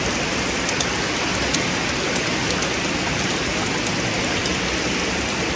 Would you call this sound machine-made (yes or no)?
no